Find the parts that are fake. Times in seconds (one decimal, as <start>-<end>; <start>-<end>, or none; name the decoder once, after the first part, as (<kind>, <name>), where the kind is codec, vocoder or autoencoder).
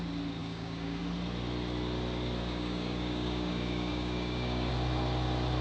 0.4-1.0 (codec, DAC); 2.4-4.7